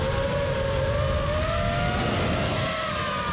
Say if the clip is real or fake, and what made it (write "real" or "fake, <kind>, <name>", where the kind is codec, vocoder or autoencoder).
real